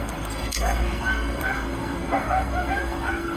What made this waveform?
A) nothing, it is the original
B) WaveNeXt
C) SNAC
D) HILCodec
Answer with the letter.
C